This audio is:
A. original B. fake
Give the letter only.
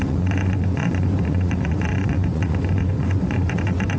B